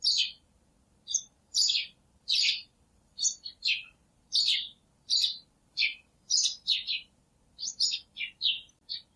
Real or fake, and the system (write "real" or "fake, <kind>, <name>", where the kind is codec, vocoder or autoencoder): fake, vocoder, BigVGAN v2